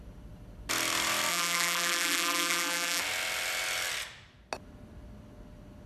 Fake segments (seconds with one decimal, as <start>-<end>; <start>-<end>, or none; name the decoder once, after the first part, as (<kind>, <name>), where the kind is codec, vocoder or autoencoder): 1.3-3.0 (vocoder, BigVGAN v2)